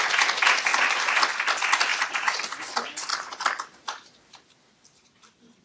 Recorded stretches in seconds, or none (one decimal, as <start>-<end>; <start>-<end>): 0.0-0.7; 1.2-1.9; 2.4-3.1